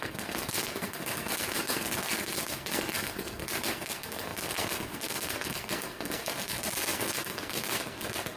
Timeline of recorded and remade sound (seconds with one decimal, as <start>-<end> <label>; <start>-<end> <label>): 0.0-8.4 remade